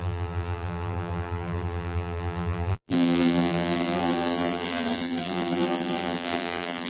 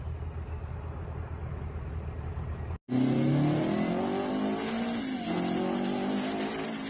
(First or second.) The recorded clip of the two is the second